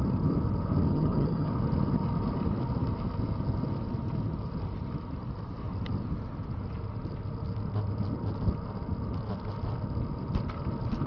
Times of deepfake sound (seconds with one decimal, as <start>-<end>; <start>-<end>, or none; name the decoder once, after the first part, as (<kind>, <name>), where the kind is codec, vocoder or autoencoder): 0.9-1.5 (vocoder, HiFi-GAN)